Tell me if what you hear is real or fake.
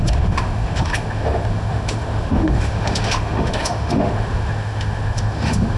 fake